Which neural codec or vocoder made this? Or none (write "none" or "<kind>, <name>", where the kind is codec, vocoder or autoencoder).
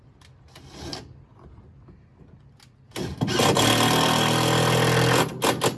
none